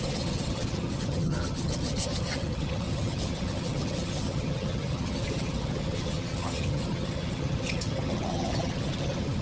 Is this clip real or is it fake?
fake